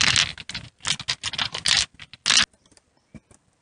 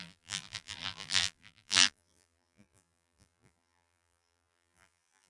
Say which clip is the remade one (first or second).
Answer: second